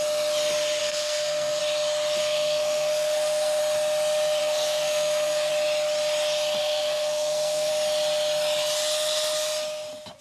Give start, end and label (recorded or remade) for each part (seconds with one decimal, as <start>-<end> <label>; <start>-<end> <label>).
0.0-0.8 recorded; 0.8-1.6 remade; 1.6-2.2 recorded; 2.2-3.6 remade; 3.6-4.4 recorded; 4.4-5.5 remade; 5.5-6.6 recorded; 6.6-7.7 remade; 7.7-10.2 recorded